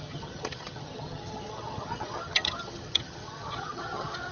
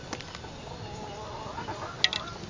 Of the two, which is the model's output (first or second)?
first